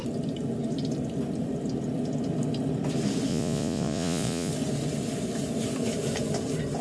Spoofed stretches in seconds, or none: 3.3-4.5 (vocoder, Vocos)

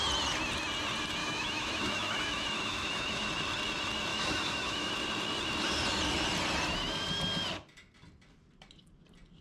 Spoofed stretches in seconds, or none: 1.2-3.3 (autoencoder, DAC-VAE); 4.1-4.9